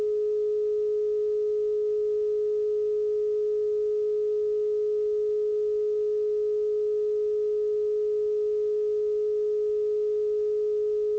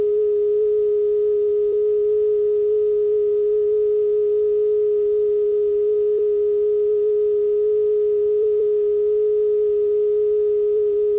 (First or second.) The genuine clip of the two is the first